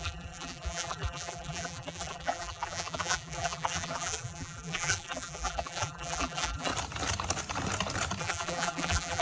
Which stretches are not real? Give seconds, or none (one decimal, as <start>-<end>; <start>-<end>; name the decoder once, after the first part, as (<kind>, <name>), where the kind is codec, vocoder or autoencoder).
0.0-6.7 (vocoder, BigVGAN v2); 8.2-9.2